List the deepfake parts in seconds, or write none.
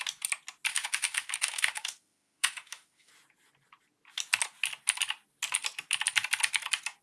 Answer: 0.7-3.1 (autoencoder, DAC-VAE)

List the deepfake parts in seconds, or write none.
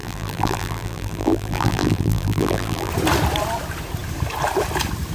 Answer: 0.0-2.9 (vocoder, BigVGAN v2)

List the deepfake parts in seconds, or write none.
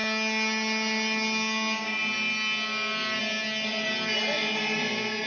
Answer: none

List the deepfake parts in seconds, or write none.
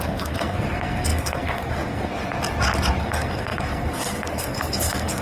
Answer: 0.0-2.1 (codec, SNAC); 3.0-5.2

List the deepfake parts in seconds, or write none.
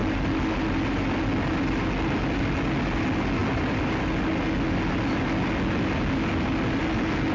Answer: none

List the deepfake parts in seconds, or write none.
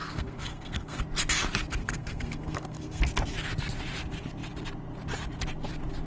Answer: 0.0-1.0 (codec, SNAC); 1.8-3.0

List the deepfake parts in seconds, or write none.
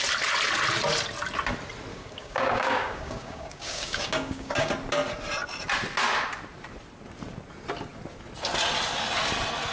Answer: 1.9-4.7 (codec, DAC)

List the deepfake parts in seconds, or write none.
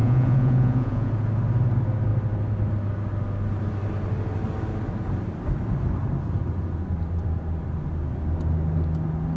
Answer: 0.0-1.1 (vocoder, Vocos)